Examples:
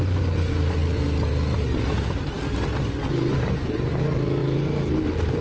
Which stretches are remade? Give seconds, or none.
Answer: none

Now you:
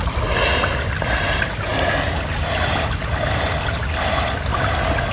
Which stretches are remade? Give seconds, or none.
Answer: none